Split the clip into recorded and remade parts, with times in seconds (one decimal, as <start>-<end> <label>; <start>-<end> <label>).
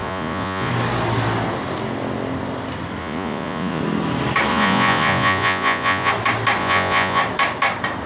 0.0-0.7 remade; 0.7-3.0 recorded; 3.0-3.8 remade; 3.8-4.5 recorded; 4.5-6.1 remade; 6.1-6.6 recorded; 6.6-7.2 remade; 7.2-8.1 recorded